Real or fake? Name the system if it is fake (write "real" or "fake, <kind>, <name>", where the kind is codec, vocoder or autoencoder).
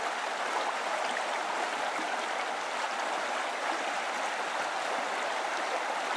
real